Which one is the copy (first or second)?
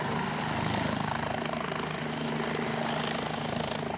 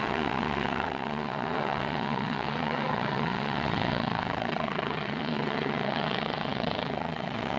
second